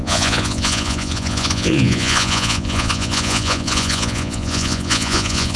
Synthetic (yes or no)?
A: yes